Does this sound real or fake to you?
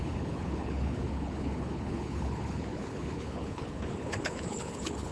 fake